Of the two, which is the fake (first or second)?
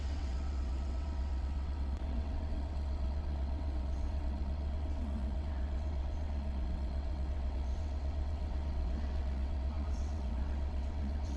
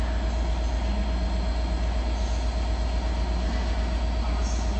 first